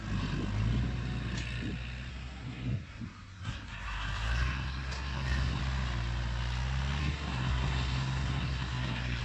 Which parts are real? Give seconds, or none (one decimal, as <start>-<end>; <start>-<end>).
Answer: 0.0-2.1; 5.6-7.0